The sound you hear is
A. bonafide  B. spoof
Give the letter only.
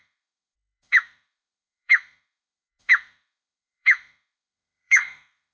B